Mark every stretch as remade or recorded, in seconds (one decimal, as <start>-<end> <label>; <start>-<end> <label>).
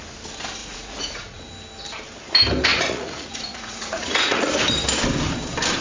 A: 0.0-0.6 recorded; 0.6-1.5 remade; 1.5-2.7 recorded; 2.7-4.5 remade; 4.5-5.8 recorded